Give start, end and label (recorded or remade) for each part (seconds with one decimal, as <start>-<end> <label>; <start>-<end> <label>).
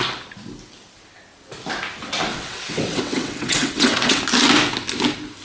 0.0-2.3 recorded; 2.3-4.2 remade; 4.2-5.4 recorded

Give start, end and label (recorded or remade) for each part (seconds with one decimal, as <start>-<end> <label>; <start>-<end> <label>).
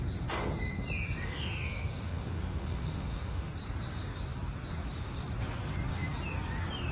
0.0-1.2 recorded; 1.2-3.5 remade; 3.5-6.9 recorded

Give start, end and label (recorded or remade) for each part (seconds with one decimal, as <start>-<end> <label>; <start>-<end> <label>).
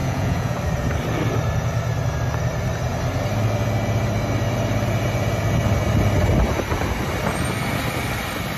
0.0-0.6 remade; 0.6-8.6 recorded